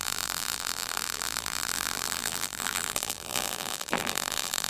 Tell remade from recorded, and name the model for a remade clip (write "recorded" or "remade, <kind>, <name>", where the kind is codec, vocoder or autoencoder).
remade, vocoder, BigVGAN v2